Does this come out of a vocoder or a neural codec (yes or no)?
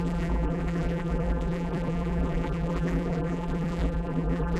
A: yes